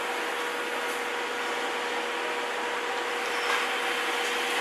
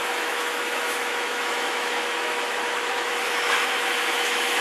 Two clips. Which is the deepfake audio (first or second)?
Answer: second